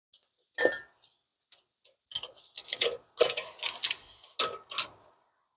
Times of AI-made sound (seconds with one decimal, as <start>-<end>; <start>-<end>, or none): none